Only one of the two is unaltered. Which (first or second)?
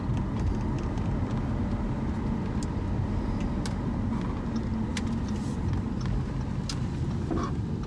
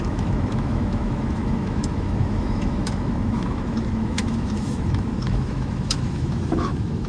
first